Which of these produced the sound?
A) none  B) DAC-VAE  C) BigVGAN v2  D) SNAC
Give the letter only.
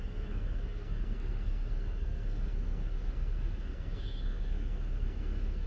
D